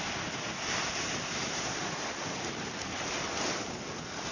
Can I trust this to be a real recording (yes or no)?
yes